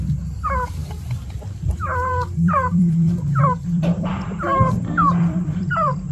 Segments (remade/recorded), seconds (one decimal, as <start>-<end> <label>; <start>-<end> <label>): 0.0-4.1 remade; 4.1-5.0 recorded; 5.0-6.1 remade